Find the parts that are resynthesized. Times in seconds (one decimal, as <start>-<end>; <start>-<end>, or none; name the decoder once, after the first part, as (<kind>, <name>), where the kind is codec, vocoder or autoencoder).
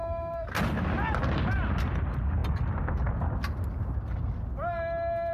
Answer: 0.0-0.5 (codec, SNAC)